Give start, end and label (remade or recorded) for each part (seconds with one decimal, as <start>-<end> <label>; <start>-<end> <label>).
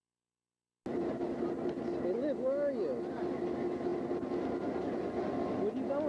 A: 0.0-6.1 recorded